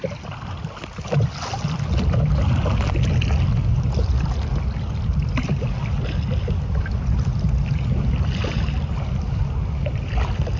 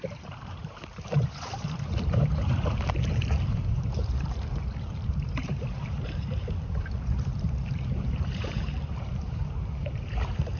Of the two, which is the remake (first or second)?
second